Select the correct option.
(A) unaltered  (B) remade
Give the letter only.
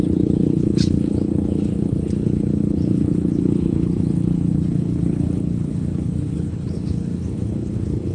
B